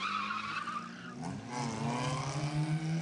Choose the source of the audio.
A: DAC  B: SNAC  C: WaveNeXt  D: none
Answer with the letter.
D